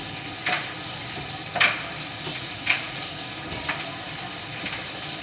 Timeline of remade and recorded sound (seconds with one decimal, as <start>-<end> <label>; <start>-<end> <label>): 0.0-2.3 recorded; 2.3-3.0 remade; 3.0-5.2 recorded